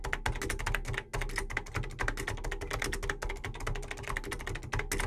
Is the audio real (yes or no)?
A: yes